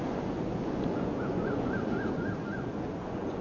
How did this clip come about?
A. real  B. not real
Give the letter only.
B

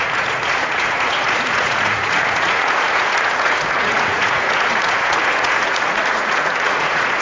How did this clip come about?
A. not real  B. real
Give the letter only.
A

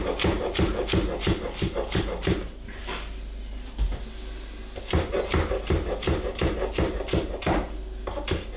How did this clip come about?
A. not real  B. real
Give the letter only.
B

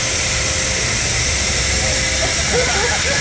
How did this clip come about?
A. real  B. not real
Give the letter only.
A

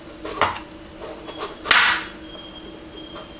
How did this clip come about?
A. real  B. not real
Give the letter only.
A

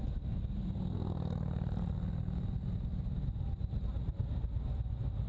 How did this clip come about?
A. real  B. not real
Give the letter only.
A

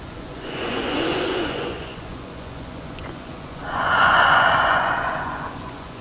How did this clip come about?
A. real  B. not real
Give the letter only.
B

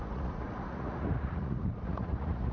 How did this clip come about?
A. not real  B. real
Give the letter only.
A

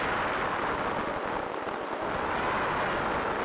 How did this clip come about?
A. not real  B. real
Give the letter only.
B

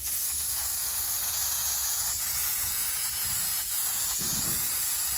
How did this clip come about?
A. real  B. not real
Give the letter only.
B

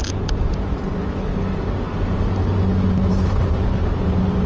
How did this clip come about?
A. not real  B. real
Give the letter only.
B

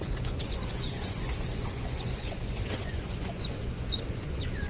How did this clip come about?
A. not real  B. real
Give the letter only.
A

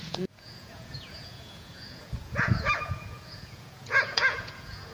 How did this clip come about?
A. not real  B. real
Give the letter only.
A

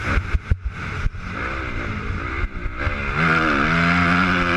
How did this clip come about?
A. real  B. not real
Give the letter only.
A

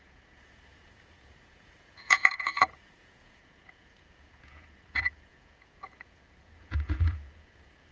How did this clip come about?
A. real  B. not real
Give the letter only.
B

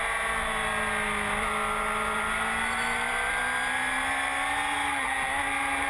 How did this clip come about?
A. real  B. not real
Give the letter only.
A